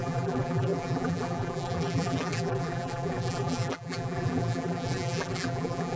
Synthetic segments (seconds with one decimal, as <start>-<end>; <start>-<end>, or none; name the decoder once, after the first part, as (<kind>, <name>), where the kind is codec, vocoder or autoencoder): 0.0-6.0 (vocoder, BigVGAN v2)